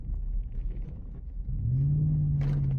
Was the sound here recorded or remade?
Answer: recorded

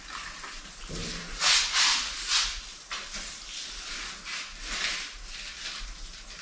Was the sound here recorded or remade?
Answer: recorded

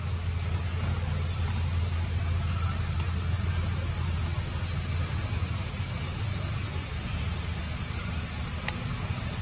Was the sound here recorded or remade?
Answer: recorded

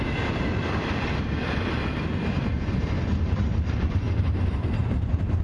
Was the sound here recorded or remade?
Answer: remade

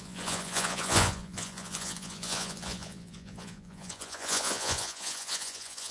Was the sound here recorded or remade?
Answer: remade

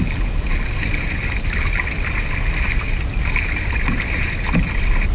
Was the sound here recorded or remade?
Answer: recorded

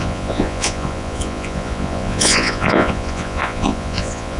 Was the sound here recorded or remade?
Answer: remade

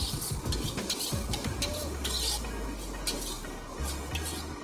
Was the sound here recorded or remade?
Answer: recorded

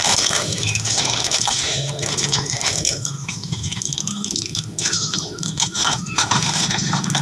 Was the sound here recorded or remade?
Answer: remade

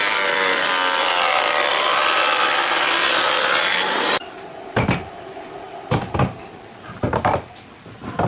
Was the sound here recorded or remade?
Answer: recorded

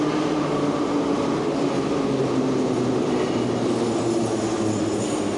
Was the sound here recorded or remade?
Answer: recorded